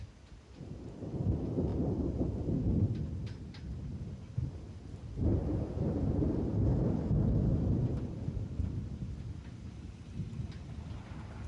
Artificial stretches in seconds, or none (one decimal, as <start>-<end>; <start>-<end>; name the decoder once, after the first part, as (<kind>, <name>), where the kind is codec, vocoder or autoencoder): 1.7-4.0 (vocoder, BigVGAN v2); 5.3-6.1; 7.5-10.7

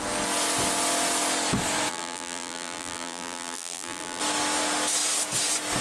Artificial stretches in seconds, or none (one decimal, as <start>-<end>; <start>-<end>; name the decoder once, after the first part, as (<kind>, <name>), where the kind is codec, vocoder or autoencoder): 1.9-4.2 (vocoder, BigVGAN v2)